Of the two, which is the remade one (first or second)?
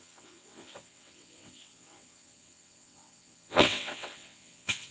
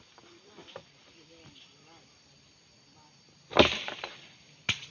first